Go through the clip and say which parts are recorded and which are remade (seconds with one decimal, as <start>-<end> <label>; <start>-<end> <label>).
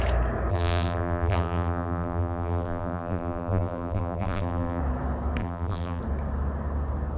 0.0-0.5 recorded; 0.5-4.8 remade; 4.8-5.4 recorded; 5.4-6.0 remade; 6.0-7.2 recorded